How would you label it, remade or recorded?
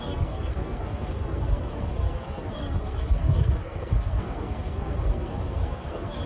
remade